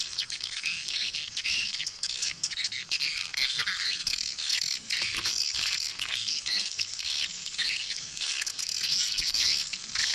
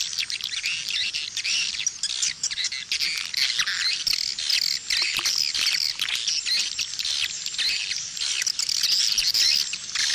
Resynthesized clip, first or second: first